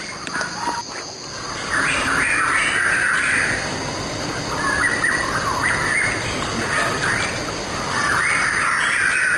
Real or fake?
real